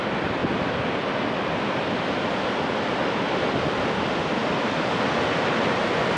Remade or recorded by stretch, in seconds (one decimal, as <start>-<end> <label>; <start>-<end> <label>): 0.0-6.2 recorded